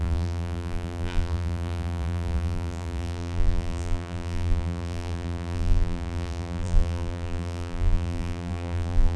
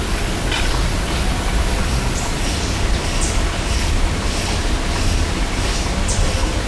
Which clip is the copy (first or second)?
first